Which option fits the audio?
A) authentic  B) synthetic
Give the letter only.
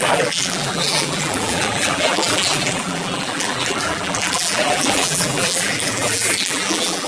B